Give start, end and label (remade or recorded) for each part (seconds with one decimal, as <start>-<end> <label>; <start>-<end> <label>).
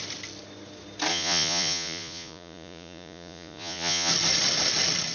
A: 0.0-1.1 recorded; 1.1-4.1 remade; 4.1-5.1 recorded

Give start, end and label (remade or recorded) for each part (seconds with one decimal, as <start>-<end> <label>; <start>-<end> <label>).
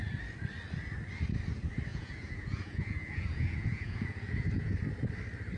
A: 0.0-1.9 recorded; 1.9-4.8 remade; 4.8-5.6 recorded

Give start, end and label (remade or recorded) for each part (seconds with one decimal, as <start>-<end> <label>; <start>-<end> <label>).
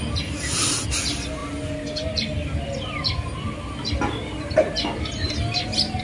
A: 0.0-6.0 recorded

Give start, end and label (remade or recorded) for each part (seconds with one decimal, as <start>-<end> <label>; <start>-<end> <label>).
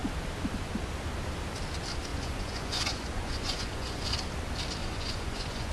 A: 0.0-2.1 recorded; 2.1-4.1 remade; 4.1-4.8 recorded; 4.8-5.7 remade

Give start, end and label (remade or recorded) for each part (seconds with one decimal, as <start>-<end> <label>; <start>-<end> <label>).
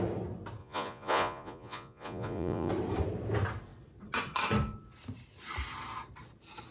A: 0.0-0.6 recorded; 0.6-2.7 remade; 2.7-6.7 recorded